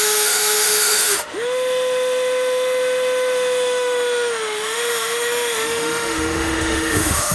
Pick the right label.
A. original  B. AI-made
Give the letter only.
B